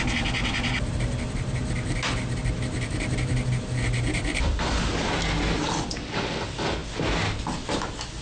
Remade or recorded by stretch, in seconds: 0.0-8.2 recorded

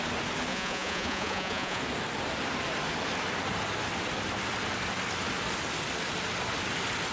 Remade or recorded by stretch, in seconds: 0.0-0.5 recorded; 0.5-1.8 remade; 1.8-7.1 recorded